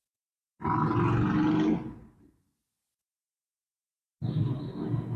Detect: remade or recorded recorded